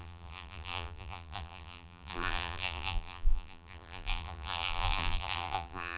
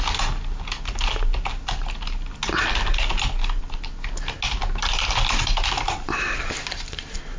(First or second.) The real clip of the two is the second